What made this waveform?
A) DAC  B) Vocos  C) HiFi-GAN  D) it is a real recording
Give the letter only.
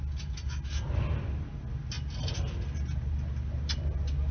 D